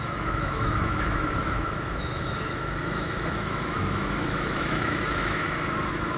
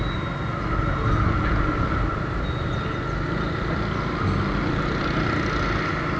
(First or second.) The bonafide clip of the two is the second